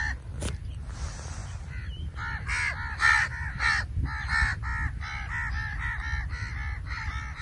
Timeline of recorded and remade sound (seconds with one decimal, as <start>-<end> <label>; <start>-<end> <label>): 0.0-7.4 recorded